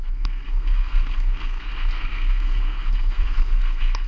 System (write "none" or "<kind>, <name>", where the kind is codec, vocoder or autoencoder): codec, SNAC